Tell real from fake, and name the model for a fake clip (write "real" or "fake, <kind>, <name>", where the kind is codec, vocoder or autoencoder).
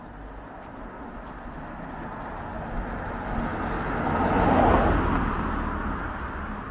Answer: real